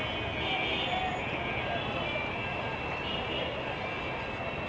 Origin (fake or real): real